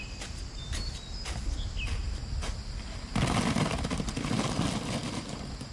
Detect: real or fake real